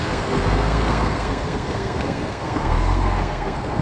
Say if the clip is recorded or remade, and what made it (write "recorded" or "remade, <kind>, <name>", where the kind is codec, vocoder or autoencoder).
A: remade, codec, SNAC